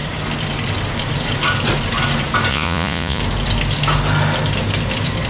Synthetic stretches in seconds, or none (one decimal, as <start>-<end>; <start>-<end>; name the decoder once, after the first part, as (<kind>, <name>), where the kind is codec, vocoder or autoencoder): 2.5-3.2 (vocoder, Vocos)